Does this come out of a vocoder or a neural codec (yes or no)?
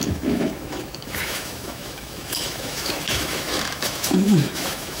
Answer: yes